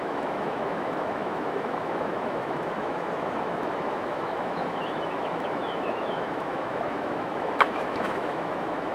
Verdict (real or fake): fake